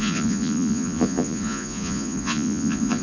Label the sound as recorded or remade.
remade